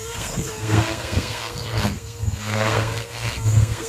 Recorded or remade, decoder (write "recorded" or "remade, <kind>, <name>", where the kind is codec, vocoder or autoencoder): remade, codec, SNAC